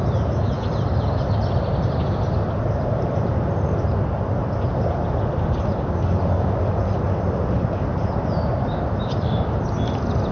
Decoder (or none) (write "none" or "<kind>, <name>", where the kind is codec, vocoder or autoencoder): none